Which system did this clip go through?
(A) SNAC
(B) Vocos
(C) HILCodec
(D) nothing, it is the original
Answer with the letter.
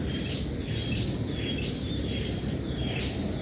D